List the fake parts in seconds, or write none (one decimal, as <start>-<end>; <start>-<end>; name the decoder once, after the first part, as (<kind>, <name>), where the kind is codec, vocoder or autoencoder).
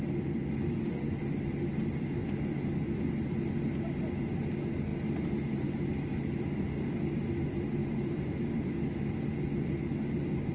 7.8-8.7 (vocoder, BigVGAN v2)